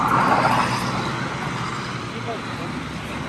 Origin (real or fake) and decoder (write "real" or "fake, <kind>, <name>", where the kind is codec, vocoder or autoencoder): real